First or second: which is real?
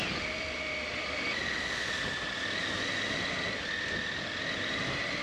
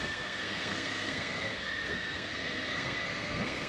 first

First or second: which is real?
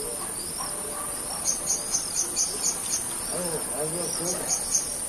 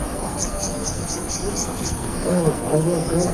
first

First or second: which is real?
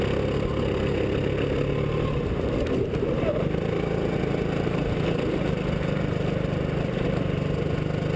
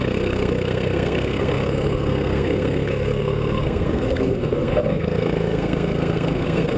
first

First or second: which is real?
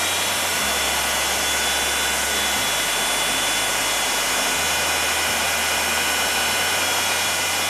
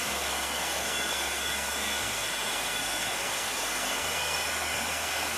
first